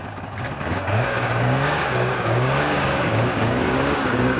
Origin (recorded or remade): remade